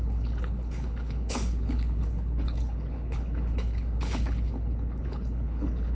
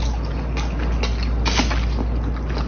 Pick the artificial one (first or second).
first